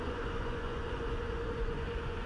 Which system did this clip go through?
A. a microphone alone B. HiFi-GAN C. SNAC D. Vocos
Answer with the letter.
D